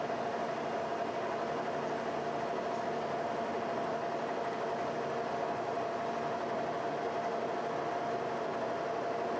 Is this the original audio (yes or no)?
yes